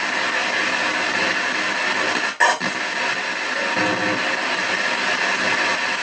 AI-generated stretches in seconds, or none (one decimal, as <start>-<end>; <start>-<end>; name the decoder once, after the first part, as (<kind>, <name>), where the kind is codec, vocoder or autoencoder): none